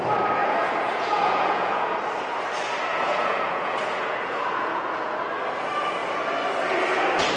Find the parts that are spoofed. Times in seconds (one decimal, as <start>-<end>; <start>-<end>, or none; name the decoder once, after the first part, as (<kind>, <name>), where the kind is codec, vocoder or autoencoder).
0.4-2.1 (vocoder, Vocos); 2.9-5.3